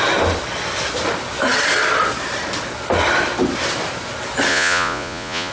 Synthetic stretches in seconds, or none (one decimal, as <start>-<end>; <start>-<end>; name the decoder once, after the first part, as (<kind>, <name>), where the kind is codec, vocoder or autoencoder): 4.5-5.5 (vocoder, Vocos)

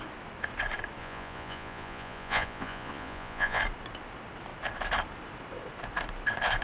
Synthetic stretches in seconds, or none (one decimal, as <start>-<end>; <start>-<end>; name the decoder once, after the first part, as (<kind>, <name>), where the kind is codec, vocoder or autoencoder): 1.0-3.6 (vocoder, Vocos)

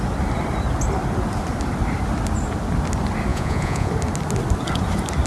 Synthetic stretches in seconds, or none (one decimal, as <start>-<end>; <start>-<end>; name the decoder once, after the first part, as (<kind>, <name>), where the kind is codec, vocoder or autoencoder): 3.3-3.9 (vocoder, Vocos)

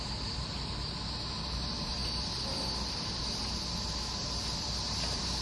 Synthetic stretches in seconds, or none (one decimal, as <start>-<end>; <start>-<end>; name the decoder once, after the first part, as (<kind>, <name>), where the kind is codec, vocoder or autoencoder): none

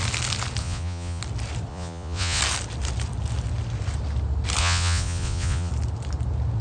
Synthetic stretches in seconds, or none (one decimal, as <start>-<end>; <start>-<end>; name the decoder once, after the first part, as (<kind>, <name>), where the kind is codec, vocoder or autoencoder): 0.6-1.2 (vocoder, Vocos); 1.7-2.4; 4.6-5.7